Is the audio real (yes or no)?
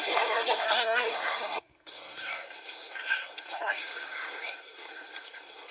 no